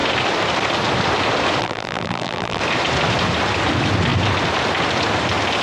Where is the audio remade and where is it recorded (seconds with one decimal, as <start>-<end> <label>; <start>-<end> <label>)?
0.0-1.6 recorded; 1.6-2.6 remade; 2.6-5.6 recorded

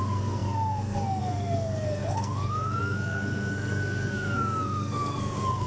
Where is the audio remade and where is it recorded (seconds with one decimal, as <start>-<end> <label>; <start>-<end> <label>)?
0.0-5.7 remade

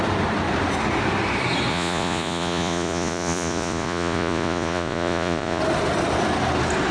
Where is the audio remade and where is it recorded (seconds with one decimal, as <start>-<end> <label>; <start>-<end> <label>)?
0.0-1.7 recorded; 1.7-5.6 remade; 5.6-6.9 recorded

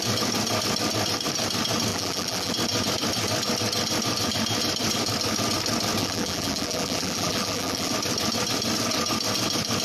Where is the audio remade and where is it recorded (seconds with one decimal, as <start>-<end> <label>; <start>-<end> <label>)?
0.0-1.9 recorded; 1.9-2.5 remade; 2.5-6.0 recorded; 6.0-7.9 remade; 7.9-9.8 recorded